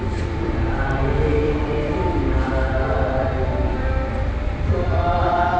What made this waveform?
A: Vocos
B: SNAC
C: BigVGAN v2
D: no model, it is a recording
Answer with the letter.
C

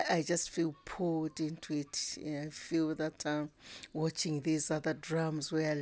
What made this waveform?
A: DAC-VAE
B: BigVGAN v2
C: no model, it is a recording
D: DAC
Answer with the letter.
C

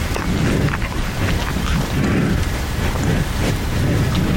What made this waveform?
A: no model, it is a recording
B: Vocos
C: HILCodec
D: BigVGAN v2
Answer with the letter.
A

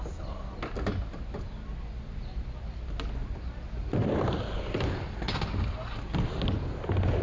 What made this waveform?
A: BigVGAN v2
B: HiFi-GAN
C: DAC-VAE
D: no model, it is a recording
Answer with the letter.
D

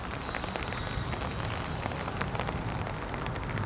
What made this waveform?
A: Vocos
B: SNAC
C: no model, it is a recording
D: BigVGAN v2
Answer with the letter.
C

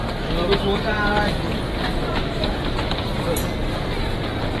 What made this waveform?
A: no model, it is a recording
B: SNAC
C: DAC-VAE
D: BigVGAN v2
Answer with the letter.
A